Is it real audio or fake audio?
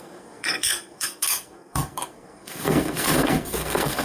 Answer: fake